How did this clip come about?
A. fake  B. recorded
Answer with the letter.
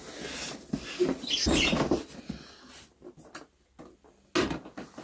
B